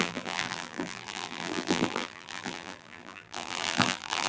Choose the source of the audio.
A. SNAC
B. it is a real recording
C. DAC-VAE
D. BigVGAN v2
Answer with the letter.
D